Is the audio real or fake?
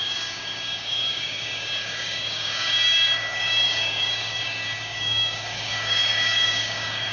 fake